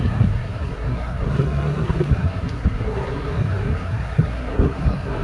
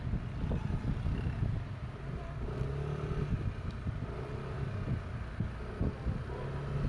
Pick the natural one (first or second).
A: second